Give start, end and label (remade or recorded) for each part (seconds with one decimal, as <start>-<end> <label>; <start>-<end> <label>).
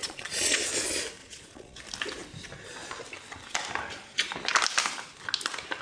0.0-0.7 remade; 0.7-1.2 recorded; 1.2-1.8 remade; 1.8-5.8 recorded